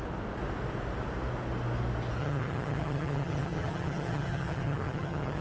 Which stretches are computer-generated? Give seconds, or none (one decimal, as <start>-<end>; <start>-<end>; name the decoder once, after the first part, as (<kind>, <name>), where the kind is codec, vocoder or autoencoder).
2.2-5.4 (vocoder, HiFi-GAN)